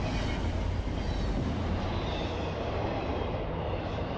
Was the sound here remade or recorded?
recorded